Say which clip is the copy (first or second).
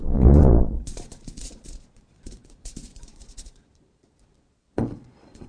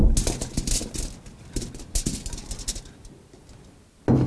first